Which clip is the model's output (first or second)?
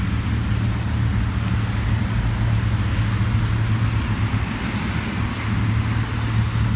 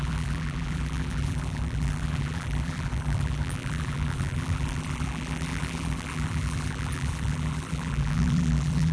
second